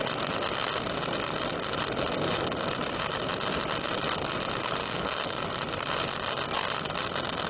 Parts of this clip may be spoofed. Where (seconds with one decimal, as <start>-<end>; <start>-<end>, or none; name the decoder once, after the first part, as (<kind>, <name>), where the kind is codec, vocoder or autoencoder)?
4.8-5.4 (codec, DAC)